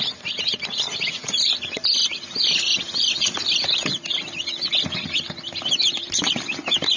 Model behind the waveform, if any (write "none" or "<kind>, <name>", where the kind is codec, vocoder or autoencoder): vocoder, BigVGAN v2